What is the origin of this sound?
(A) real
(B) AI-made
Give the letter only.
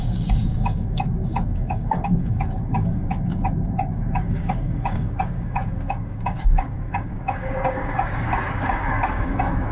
B